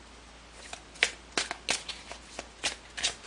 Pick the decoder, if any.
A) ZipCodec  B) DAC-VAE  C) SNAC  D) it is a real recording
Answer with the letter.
D